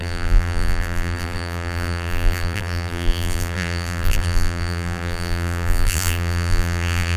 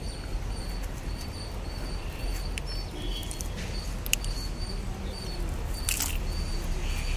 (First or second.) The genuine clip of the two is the second